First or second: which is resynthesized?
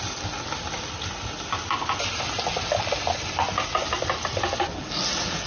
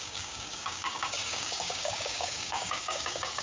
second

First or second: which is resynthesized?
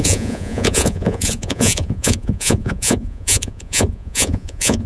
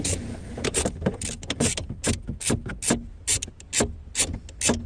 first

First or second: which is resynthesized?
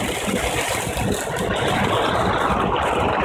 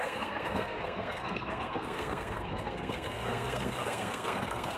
second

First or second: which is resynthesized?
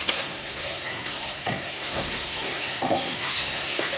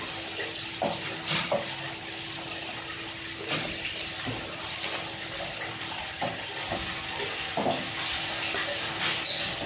first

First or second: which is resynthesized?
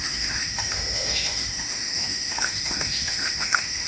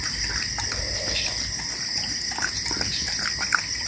first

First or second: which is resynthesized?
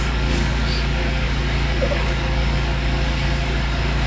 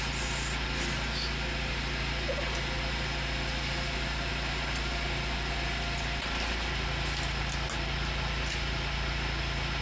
first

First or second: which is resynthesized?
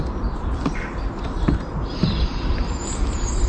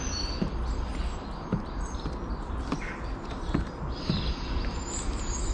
first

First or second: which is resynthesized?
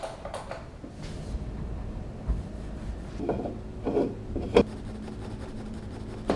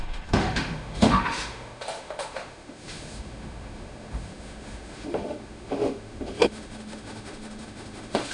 second